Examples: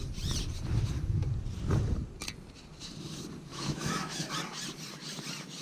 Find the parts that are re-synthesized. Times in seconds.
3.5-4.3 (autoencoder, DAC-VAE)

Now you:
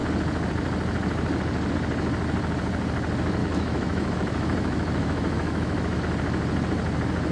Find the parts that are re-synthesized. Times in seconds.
3.4-6.0 (autoencoder, DAC-VAE)